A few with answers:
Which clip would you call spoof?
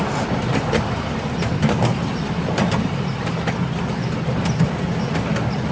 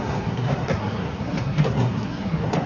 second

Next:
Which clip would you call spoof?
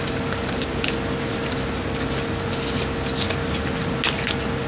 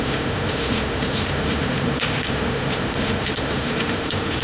second